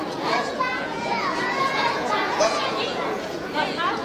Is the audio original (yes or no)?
no